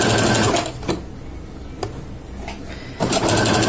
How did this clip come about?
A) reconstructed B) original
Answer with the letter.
B